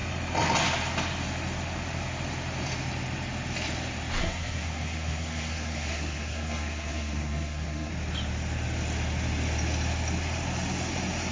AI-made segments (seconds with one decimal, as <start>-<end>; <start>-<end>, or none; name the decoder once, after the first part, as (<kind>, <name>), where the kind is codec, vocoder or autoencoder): 4.2-7.9 (codec, SNAC)

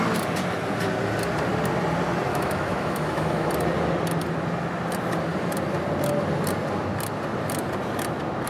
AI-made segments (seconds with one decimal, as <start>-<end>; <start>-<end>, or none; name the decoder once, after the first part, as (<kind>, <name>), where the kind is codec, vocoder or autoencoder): 2.3-3.5 (autoencoder, DAC-VAE)

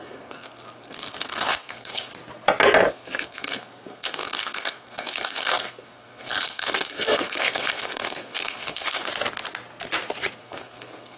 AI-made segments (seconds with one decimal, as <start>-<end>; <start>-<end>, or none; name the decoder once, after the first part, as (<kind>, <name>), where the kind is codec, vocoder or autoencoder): 0.0-2.1 (codec, SNAC); 2.9-9.1; 10.4-11.2

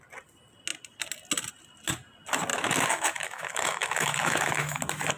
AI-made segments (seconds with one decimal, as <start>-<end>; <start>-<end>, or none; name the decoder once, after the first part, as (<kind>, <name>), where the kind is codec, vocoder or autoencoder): 2.5-4.8 (autoencoder, DAC-VAE)

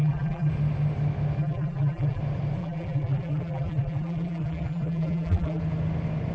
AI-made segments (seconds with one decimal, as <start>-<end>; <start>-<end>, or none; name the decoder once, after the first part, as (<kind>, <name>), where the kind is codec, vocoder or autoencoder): 0.0-0.5 (vocoder, BigVGAN v2); 1.4-2.2; 2.6-5.6

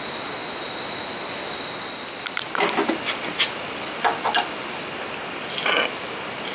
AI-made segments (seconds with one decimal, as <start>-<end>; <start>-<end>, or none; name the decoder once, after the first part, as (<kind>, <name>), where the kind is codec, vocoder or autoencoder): none

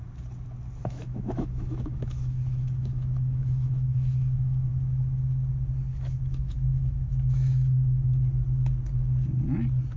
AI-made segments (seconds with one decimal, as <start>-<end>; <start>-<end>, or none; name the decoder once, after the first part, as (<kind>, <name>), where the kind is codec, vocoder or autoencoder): 0.8-4.7 (autoencoder, DAC-VAE); 5.9-8.2

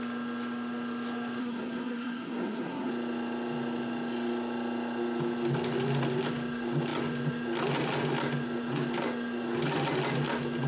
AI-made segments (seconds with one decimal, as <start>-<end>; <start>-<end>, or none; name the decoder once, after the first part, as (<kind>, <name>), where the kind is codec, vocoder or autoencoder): 1.4-2.9 (codec, SNAC)